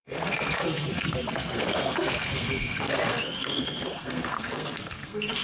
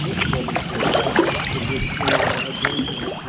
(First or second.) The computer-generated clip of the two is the first